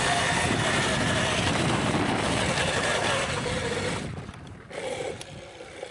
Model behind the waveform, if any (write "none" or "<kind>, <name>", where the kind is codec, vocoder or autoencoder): vocoder, BigVGAN v2